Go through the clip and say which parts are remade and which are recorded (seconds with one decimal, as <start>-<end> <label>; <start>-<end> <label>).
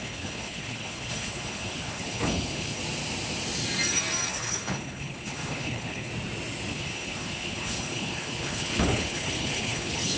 0.0-2.8 remade; 2.8-4.3 recorded; 4.3-6.1 remade; 6.1-6.7 recorded; 6.7-10.2 remade